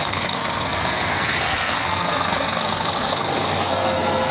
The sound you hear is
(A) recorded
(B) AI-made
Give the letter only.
B